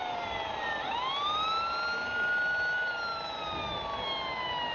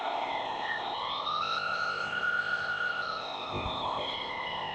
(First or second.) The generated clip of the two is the second